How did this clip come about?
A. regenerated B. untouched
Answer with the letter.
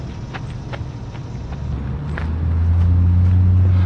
B